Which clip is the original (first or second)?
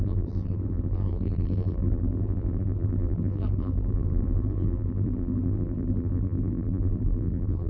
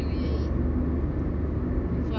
second